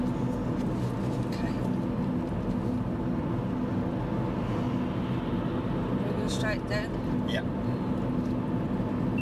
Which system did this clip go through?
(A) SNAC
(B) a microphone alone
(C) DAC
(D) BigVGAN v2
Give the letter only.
B